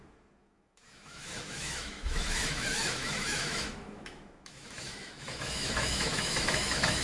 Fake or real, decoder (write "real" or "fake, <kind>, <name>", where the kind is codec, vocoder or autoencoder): fake, autoencoder, DAC-VAE